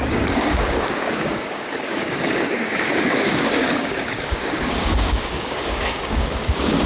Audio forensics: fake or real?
fake